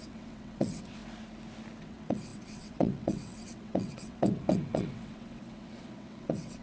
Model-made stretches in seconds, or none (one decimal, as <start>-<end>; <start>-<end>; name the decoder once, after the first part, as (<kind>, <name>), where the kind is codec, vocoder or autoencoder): 0.0-1.0 (vocoder, WaveNeXt); 1.8-6.6